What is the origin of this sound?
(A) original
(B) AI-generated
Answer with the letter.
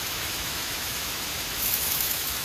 B